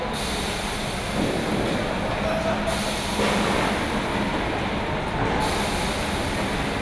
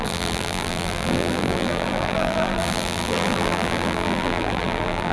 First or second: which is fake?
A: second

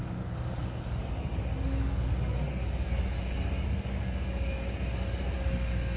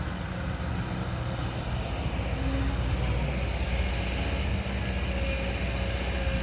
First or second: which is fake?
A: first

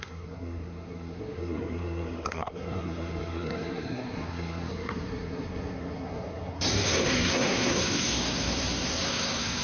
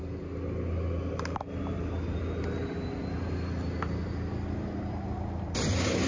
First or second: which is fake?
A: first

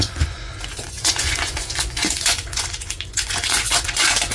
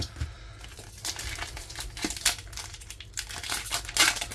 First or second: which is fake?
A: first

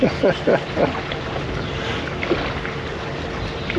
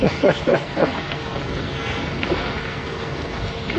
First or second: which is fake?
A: second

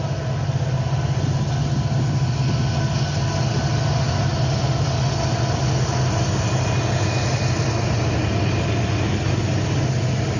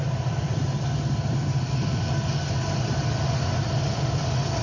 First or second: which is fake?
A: second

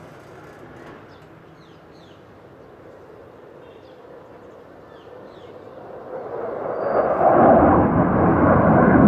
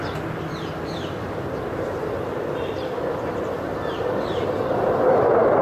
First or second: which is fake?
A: second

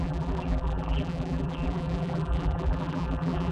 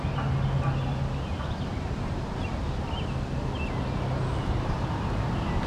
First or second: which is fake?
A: first